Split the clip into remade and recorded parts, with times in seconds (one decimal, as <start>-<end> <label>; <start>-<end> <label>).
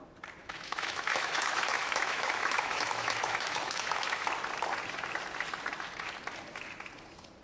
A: 0.0-0.4 recorded; 0.4-4.3 remade; 4.3-7.4 recorded